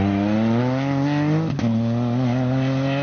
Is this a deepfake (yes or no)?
no